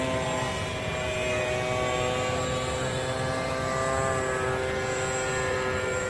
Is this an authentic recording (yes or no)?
yes